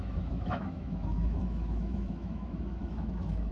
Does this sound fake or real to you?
fake